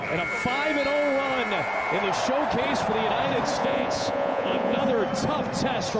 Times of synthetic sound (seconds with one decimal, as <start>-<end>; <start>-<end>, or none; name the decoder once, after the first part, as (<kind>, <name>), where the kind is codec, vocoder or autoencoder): 3.6-4.8 (vocoder, Vocos)